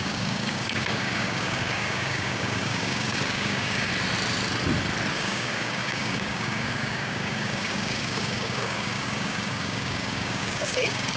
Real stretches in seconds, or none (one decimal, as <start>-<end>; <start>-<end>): 3.9-5.1